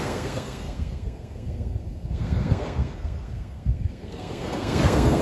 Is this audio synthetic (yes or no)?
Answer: yes